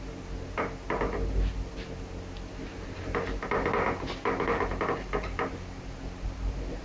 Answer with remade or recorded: recorded